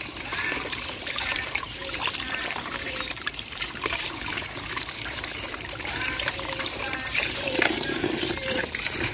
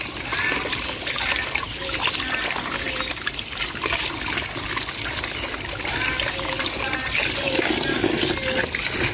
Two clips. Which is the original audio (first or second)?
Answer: second